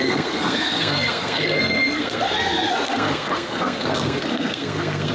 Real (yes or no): no